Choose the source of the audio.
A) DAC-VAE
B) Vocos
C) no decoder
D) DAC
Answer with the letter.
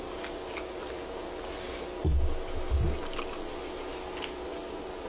C